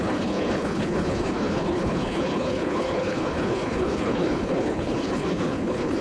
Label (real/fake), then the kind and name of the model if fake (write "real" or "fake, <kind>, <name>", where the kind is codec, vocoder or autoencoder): fake, codec, HILCodec